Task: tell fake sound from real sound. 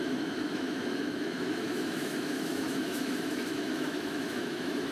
fake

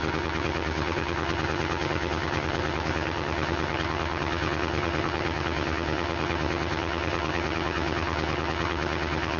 fake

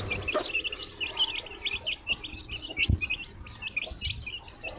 real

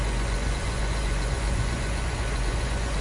fake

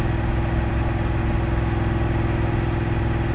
real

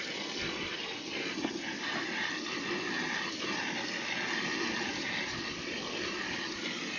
real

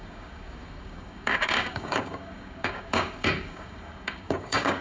fake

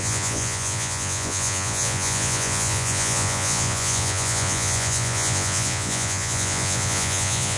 fake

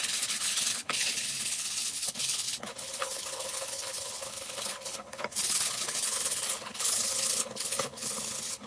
fake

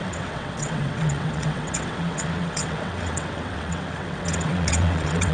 fake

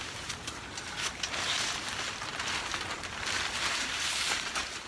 real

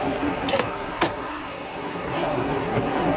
fake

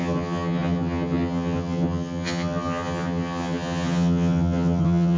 fake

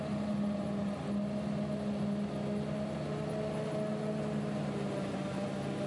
real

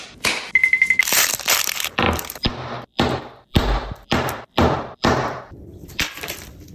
fake